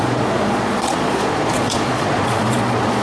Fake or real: fake